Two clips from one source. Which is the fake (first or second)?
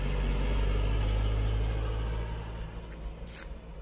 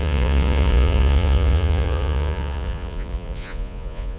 second